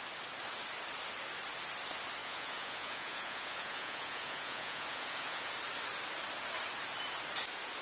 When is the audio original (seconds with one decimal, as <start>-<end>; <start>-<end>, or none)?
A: 0.0-2.2; 5.5-7.8